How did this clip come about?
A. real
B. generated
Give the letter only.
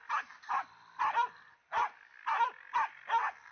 A